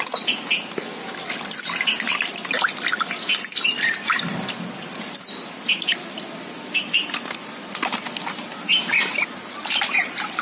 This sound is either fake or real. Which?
real